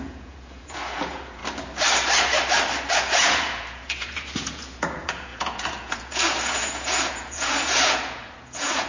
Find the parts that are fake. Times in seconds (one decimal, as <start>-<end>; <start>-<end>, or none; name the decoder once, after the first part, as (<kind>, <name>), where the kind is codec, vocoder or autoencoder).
0.0-1.4 (vocoder, Vocos); 2.9-8.9